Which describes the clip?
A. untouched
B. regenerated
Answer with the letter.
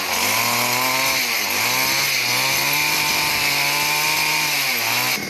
A